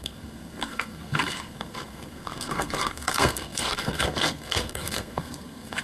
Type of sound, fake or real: fake